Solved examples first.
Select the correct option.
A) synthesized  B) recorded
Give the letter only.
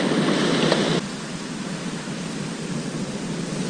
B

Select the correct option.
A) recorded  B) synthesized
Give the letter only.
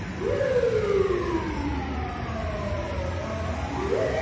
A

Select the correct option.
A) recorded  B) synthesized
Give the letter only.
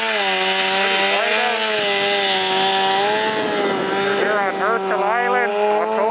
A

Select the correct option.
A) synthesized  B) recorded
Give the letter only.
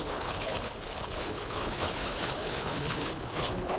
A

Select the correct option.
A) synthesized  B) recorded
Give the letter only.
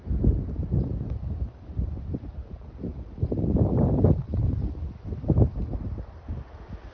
B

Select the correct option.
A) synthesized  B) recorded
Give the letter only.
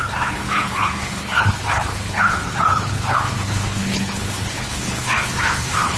A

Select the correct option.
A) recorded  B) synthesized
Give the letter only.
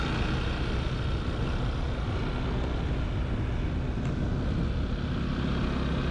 A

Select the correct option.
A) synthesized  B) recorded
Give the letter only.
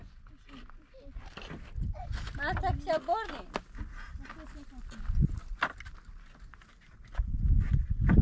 B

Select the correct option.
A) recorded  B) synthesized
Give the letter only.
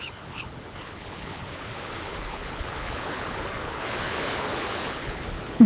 B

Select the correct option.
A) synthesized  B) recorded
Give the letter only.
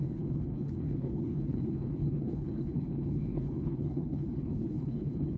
A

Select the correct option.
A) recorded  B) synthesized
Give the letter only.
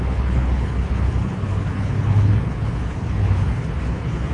B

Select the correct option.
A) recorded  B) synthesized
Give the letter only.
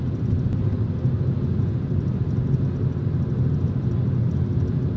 A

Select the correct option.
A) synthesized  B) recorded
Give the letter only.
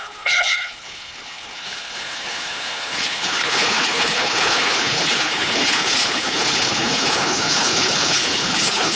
A